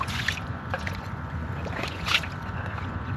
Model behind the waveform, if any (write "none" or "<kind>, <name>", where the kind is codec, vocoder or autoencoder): vocoder, Vocos